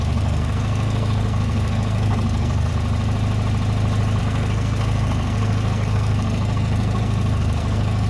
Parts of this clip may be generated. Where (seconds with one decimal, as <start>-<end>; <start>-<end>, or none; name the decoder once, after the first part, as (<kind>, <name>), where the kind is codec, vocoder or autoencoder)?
0.0-2.7 (codec, SNAC); 4.2-8.1

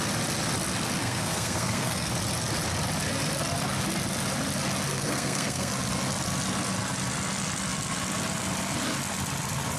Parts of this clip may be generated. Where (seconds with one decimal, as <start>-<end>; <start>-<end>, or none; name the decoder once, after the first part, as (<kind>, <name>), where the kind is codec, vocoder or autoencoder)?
1.0-2.1 (codec, SNAC); 4.9-5.7

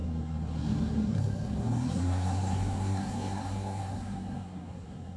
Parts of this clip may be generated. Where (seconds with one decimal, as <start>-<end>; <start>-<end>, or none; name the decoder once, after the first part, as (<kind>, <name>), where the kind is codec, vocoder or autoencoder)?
0.0-5.2 (codec, SNAC)

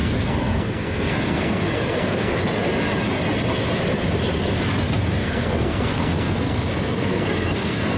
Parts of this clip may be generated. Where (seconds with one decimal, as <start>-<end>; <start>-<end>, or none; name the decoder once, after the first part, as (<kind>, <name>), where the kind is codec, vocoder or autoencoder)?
0.0-2.4 (codec, SNAC); 5.2-8.0

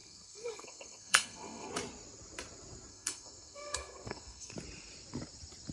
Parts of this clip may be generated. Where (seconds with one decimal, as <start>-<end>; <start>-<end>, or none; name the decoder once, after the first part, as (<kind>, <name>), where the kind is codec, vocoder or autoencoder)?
0.0-1.7 (codec, SNAC); 2.9-4.5

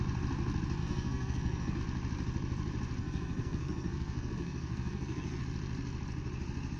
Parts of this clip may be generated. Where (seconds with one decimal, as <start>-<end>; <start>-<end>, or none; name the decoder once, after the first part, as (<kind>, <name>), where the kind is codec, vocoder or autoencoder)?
0.8-1.8 (codec, SNAC); 3.0-5.4

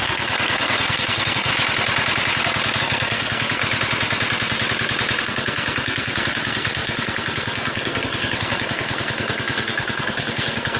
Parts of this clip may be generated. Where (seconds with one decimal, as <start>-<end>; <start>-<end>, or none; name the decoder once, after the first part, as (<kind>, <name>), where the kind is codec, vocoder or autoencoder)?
0.0-1.5 (codec, SNAC); 2.8-3.6; 5.2-10.8